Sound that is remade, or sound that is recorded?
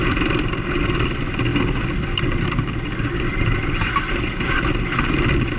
recorded